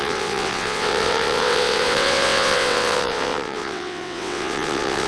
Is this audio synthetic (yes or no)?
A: yes